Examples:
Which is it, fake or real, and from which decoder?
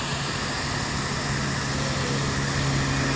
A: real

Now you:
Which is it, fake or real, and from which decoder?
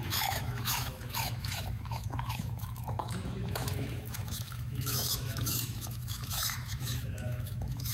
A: fake, autoencoder, DAC-VAE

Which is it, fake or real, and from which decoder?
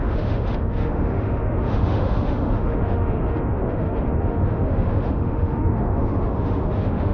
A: fake, autoencoder, DAC-VAE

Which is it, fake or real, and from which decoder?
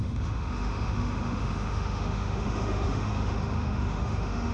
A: fake, autoencoder, DAC-VAE